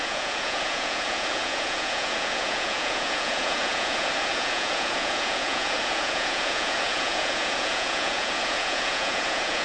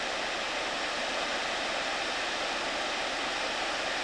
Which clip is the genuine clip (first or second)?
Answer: second